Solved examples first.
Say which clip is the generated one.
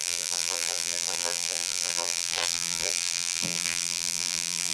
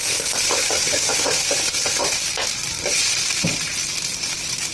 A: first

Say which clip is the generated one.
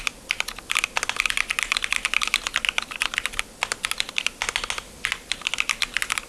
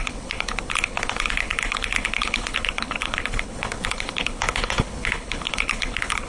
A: second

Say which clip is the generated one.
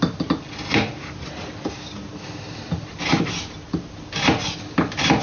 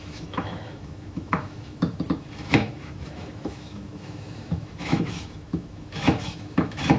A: second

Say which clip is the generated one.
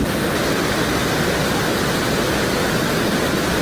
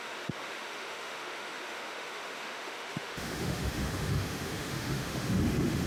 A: second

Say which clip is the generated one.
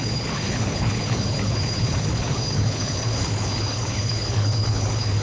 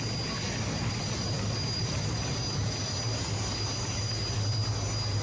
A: first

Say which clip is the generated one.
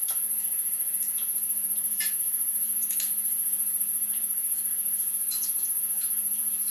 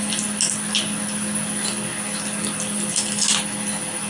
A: first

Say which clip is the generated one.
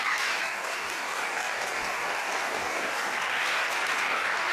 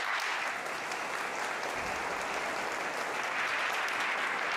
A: first